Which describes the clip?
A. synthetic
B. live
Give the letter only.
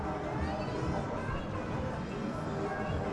B